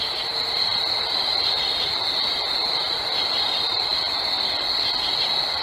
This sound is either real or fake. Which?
real